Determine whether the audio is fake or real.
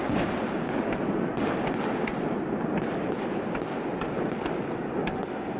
real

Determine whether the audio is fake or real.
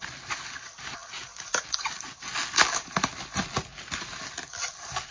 real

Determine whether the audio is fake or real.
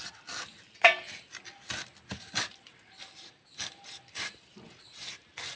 real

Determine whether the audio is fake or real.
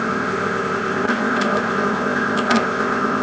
fake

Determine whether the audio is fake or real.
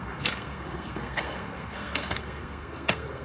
fake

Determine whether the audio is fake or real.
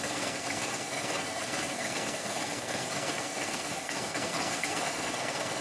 fake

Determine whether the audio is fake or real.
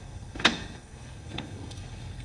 fake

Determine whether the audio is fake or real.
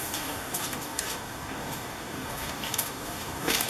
fake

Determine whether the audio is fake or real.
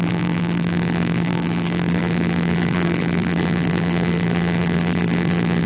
fake